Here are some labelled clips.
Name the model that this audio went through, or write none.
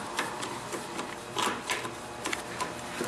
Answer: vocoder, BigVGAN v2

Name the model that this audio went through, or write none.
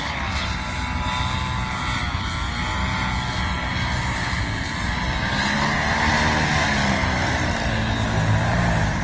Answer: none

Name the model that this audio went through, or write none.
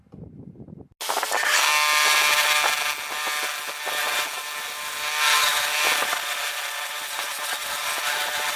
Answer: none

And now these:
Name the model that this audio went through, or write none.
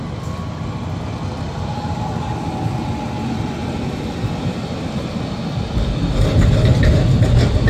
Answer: none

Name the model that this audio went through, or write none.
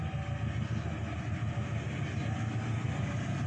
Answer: none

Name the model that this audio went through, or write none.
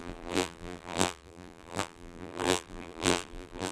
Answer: vocoder, BigVGAN v2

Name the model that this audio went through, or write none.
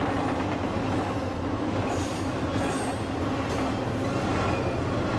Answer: none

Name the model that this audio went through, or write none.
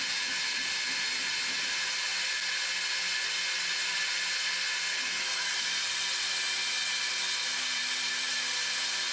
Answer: none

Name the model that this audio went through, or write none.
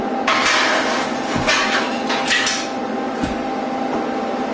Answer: none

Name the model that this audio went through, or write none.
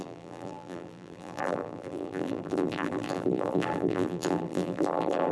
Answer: vocoder, BigVGAN v2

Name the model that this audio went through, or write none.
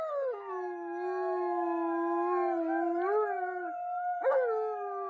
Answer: none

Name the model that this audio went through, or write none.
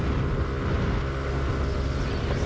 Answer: none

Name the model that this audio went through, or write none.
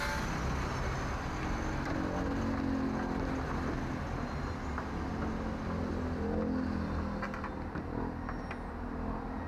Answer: none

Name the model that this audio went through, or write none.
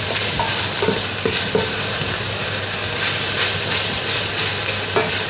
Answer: none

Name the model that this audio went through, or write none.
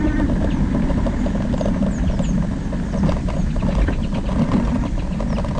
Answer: none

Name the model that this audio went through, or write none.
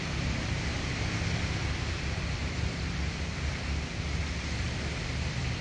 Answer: vocoder, BigVGAN v2